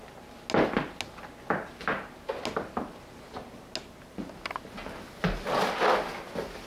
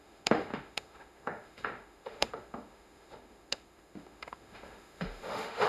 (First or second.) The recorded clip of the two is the first